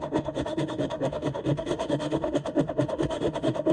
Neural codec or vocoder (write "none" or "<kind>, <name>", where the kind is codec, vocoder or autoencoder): autoencoder, DAC-VAE